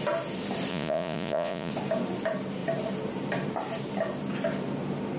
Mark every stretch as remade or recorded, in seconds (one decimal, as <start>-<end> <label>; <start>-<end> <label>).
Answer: 0.0-0.7 recorded; 0.7-1.7 remade; 1.7-5.2 recorded